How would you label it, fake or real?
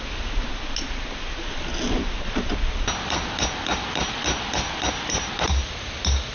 real